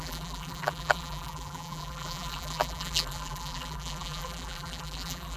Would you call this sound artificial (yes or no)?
yes